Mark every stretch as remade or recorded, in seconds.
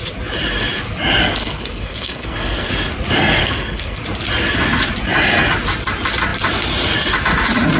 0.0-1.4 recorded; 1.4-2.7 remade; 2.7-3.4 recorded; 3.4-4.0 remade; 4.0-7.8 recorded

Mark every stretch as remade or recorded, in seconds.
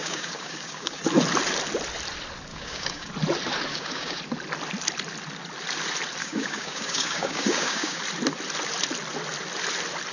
0.0-1.0 remade; 1.0-2.5 recorded; 2.5-3.1 remade; 3.1-3.7 recorded; 3.7-4.2 remade; 4.2-6.2 recorded; 6.2-8.0 remade; 8.0-10.1 recorded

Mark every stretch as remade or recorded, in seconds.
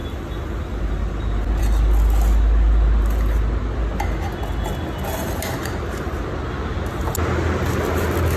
0.0-8.4 recorded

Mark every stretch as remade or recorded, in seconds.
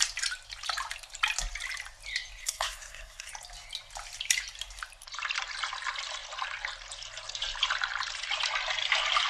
0.0-2.4 recorded; 2.4-3.3 remade; 3.3-9.3 recorded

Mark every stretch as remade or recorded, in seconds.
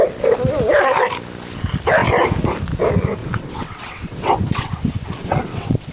0.0-3.2 recorded; 3.2-4.7 remade; 4.7-5.2 recorded; 5.2-5.9 remade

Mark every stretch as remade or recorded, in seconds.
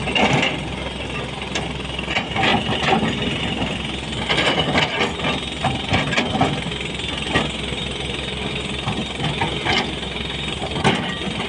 0.0-11.5 recorded